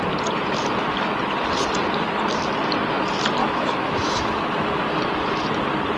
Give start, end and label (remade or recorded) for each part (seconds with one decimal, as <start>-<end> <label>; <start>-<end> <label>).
0.0-3.4 recorded; 3.4-4.8 remade; 4.8-6.0 recorded

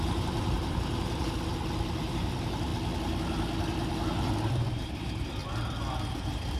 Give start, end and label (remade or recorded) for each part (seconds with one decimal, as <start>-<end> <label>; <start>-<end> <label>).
0.0-1.5 remade; 1.5-2.0 recorded; 2.0-2.7 remade; 2.7-4.5 recorded; 4.5-5.4 remade; 5.4-6.1 recorded; 6.1-6.6 remade